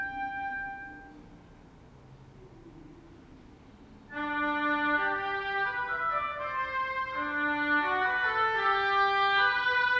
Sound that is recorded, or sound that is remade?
recorded